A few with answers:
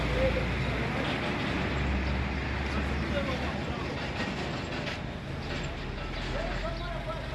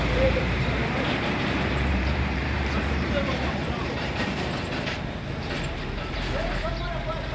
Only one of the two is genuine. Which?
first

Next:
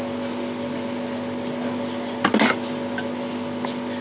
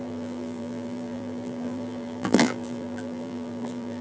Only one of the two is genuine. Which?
first